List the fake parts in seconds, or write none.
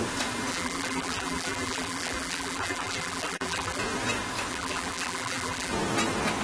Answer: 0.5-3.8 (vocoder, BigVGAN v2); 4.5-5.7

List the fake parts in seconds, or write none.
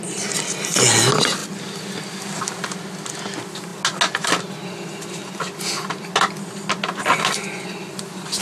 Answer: none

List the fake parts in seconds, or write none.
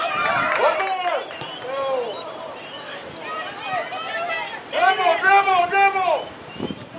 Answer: 0.0-1.5 (vocoder, BigVGAN v2); 2.1-3.0; 4.3-7.0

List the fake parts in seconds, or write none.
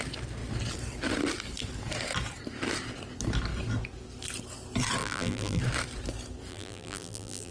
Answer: 5.0-5.6 (vocoder, BigVGAN v2); 6.5-7.5